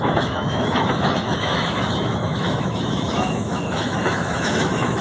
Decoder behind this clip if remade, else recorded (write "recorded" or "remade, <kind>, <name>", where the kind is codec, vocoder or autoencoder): remade, autoencoder, DAC-VAE